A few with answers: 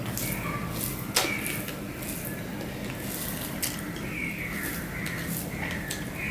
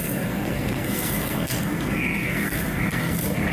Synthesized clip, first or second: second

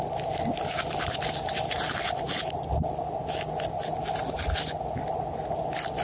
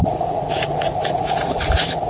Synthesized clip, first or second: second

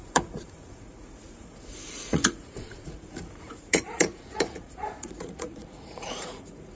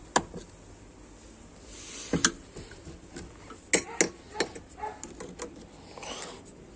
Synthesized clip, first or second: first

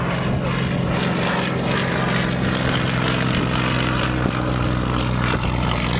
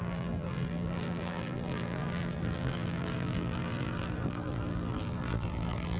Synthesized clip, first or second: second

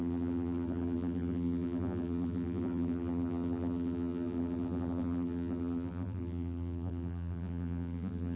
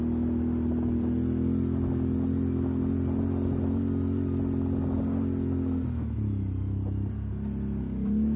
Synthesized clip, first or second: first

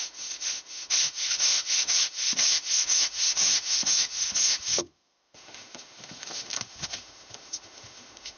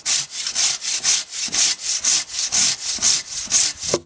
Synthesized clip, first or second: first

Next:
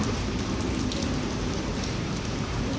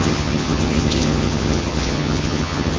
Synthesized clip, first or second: second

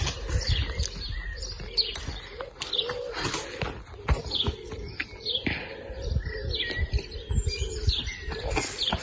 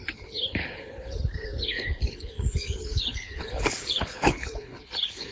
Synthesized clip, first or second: second